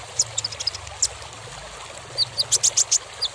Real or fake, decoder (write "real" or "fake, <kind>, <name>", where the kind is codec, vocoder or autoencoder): real